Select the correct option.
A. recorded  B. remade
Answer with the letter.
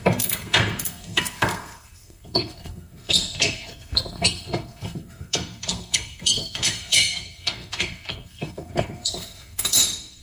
B